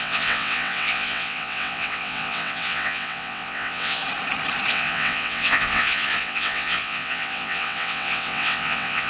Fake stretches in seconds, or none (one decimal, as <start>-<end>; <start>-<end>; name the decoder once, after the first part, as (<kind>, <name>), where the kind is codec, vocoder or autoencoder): 0.0-4.0 (vocoder, WaveNeXt); 4.7-9.1